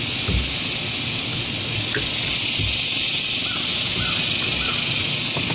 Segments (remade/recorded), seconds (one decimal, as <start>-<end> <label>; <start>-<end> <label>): 0.0-5.5 recorded